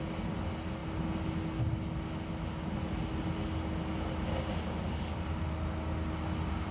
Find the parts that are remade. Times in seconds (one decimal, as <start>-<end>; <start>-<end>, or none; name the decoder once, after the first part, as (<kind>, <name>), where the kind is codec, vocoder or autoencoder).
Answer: none